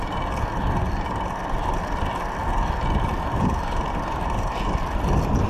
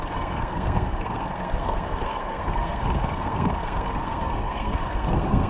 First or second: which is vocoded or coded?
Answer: second